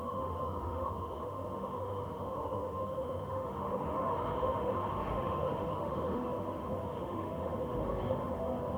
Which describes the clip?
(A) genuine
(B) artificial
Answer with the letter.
B